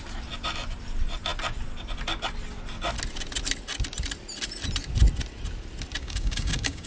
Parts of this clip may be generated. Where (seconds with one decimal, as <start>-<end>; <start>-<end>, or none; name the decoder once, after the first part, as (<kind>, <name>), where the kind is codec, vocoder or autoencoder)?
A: 6.0-6.9 (codec, DAC)